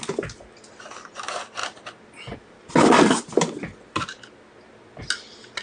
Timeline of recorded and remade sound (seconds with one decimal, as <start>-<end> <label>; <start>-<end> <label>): 0.0-5.6 recorded